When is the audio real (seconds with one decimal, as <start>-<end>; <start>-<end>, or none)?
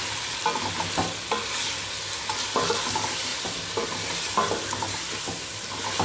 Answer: 0.0-6.0